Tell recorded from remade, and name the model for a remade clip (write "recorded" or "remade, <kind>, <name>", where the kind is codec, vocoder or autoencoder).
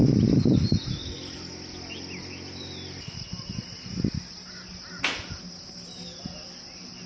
recorded